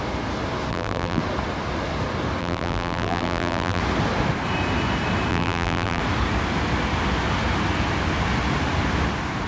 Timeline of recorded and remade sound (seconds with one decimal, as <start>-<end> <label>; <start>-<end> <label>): 0.0-0.7 recorded; 0.7-1.2 remade; 1.2-2.4 recorded; 2.4-3.8 remade; 3.8-5.3 recorded; 5.3-6.0 remade; 6.0-9.5 recorded